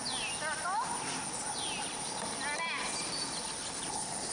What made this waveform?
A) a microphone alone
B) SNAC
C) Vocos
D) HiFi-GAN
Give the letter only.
A